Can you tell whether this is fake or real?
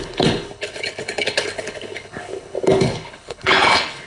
fake